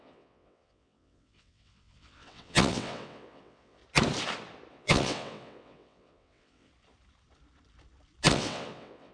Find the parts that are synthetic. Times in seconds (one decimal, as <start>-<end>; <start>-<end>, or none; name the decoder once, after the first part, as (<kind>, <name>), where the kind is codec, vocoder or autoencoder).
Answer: 0.0-3.8 (vocoder, WaveNeXt); 4.7-6.7; 8.3-9.1